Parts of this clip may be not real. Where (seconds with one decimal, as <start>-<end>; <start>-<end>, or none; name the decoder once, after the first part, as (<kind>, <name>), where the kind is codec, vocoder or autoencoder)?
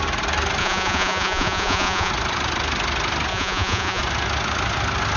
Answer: 0.6-2.1 (vocoder, Vocos); 3.3-4.0